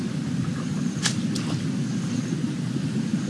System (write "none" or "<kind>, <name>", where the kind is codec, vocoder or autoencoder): none